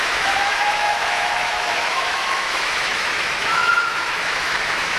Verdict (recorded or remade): remade